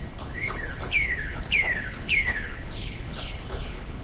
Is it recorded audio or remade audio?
remade